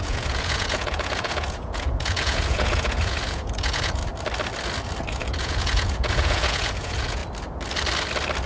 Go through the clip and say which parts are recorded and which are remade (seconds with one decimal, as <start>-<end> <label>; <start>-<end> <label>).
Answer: 0.0-4.0 remade; 4.0-5.1 recorded; 5.1-7.2 remade; 7.2-8.5 recorded